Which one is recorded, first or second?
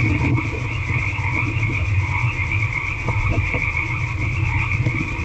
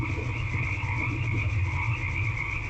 second